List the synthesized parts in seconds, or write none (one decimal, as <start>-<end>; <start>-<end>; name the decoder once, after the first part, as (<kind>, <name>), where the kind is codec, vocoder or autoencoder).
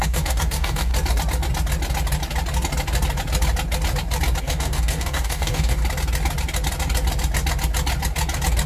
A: 0.0-0.9 (codec, DAC); 4.4-5.8